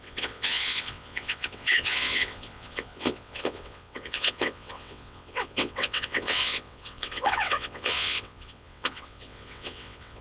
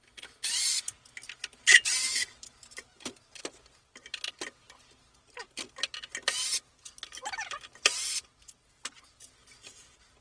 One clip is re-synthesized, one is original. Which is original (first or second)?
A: second